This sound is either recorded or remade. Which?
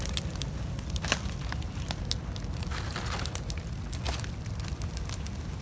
recorded